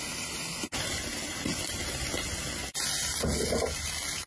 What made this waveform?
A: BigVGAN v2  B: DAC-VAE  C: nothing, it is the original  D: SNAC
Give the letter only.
C